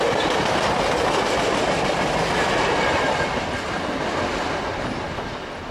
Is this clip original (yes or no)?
yes